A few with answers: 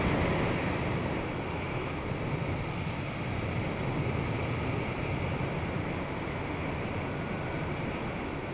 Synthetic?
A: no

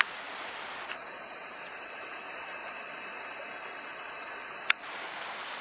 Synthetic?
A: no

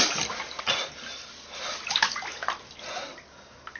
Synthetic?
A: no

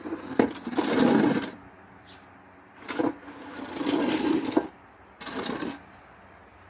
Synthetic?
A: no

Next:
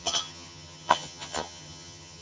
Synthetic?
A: yes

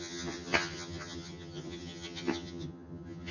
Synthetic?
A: yes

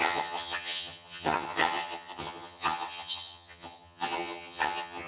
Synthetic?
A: yes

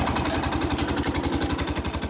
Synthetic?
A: no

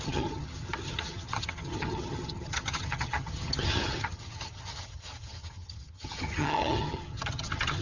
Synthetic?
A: yes